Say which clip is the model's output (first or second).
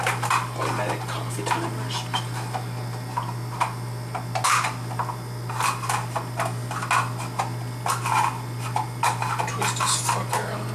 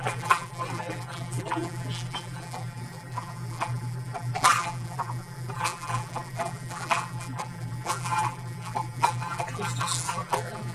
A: second